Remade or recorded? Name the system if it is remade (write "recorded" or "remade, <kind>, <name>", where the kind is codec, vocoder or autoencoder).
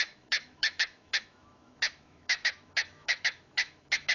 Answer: remade, autoencoder, DAC-VAE